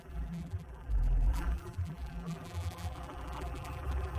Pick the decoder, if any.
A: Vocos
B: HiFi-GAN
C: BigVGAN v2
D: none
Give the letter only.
C